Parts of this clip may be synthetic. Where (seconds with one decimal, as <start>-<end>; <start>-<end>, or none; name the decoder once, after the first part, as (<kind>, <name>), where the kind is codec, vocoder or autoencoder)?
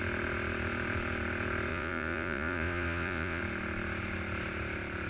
1.7-3.4 (vocoder, Vocos)